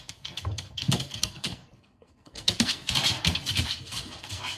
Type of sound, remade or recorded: remade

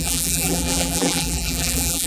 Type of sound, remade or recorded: remade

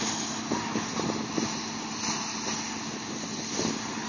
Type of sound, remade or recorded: recorded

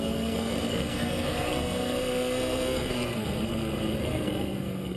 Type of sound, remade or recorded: remade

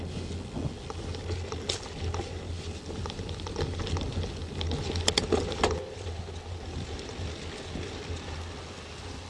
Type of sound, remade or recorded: recorded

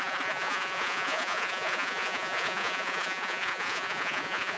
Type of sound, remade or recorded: remade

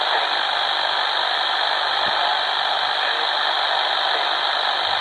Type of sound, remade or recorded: recorded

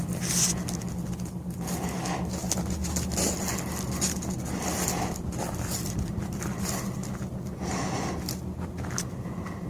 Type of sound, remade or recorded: recorded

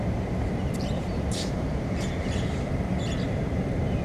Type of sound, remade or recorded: remade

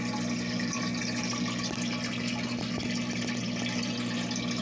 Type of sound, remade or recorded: recorded